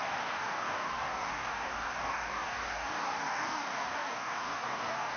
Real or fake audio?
fake